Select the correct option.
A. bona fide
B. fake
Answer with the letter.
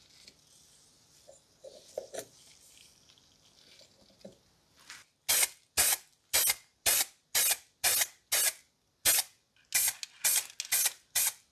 A